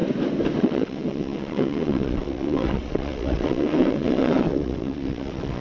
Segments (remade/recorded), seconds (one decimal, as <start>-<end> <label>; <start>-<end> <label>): 0.0-0.6 recorded; 0.6-5.6 remade